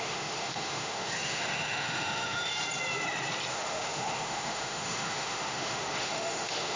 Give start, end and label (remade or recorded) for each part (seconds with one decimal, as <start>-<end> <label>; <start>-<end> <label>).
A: 0.0-2.5 remade; 2.5-3.5 recorded; 3.5-6.8 remade